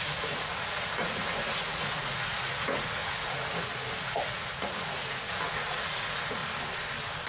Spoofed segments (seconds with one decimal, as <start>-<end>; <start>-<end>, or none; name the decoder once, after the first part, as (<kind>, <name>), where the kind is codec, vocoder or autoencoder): 0.0-6.4 (vocoder, Vocos)